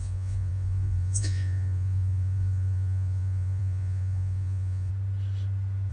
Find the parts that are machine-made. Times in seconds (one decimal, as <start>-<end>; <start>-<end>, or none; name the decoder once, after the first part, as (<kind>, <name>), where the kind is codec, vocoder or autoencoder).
0.0-4.9 (vocoder, Vocos)